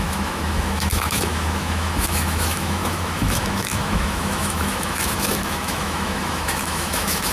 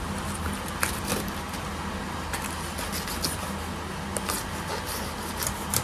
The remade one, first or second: first